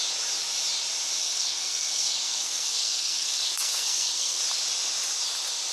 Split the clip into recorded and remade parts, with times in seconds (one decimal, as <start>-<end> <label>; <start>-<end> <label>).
0.0-1.2 recorded; 1.2-4.4 remade; 4.4-5.7 recorded